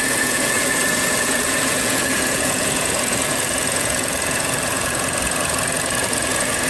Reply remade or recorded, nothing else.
remade